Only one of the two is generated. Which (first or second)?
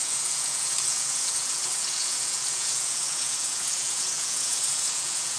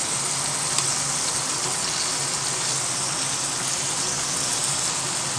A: first